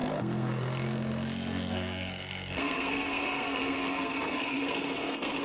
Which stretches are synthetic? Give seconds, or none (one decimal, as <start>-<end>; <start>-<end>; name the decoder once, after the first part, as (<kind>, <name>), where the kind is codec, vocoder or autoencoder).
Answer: 0.0-5.4 (codec, SNAC)